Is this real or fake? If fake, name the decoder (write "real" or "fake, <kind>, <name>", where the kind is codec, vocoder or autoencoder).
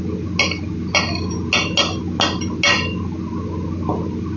real